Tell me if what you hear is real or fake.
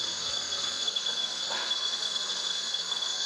fake